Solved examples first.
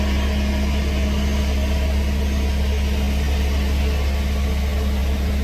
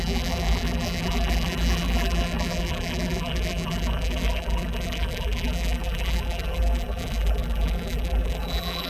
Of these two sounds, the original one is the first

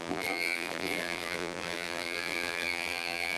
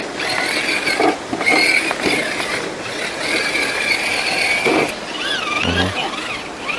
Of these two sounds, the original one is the second